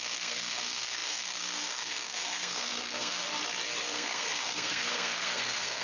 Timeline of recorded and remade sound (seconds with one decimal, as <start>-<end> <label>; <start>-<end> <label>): 0.0-3.3 remade; 3.3-3.8 recorded; 3.8-5.8 remade